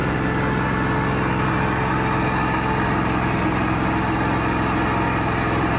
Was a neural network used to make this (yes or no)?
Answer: no